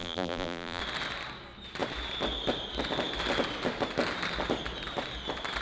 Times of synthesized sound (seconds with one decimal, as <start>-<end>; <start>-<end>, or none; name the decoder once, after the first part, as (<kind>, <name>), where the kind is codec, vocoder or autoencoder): 0.0-0.8 (vocoder, BigVGAN v2)